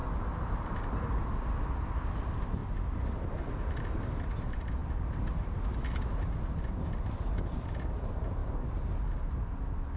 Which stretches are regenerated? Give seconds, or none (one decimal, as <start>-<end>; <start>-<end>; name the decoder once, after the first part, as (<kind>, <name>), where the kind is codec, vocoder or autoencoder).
none